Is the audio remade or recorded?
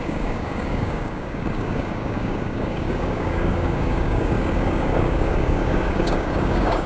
remade